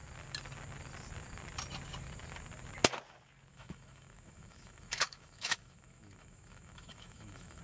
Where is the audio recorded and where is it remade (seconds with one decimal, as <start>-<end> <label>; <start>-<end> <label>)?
0.0-3.5 recorded; 3.5-7.6 remade